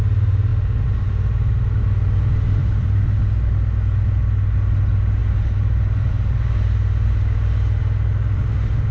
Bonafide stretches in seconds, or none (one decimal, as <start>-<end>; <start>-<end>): 0.0-8.9

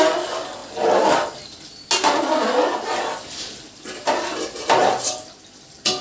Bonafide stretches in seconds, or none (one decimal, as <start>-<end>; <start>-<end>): 0.0-6.0

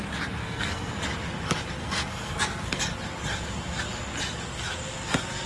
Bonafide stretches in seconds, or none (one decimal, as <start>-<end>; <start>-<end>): 0.0-0.4; 0.9-1.8; 2.8-5.5

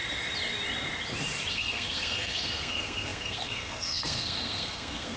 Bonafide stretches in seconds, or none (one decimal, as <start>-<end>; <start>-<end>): 0.0-1.5